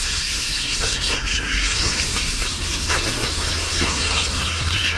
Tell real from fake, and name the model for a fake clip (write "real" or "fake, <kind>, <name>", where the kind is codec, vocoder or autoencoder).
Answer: fake, codec, SNAC